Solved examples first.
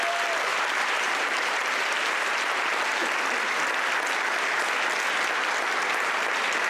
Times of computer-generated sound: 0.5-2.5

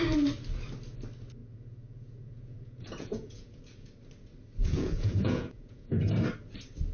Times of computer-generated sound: 1.4-3.6; 4.6-6.0